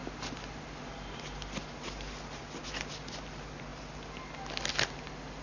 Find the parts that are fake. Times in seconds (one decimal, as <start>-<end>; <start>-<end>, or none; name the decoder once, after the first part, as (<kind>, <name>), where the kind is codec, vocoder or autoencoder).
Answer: none